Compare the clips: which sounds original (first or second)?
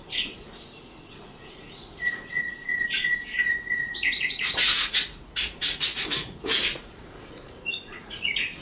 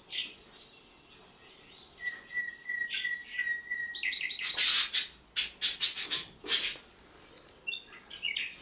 second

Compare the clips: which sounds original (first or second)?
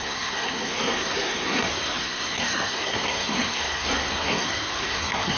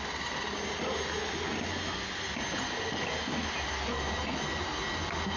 second